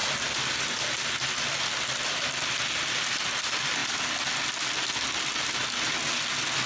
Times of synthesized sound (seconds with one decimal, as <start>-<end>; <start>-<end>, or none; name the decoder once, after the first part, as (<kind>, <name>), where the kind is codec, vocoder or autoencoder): none